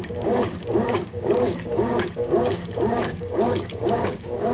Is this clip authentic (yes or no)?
no